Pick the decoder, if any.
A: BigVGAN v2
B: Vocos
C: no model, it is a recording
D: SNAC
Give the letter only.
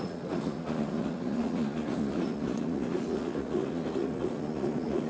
B